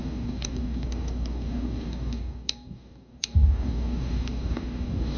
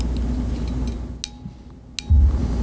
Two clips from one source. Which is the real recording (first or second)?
second